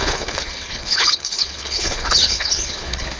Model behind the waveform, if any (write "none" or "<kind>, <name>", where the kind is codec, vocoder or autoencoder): codec, HILCodec